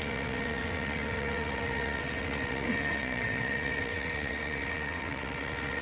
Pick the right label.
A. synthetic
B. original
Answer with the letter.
A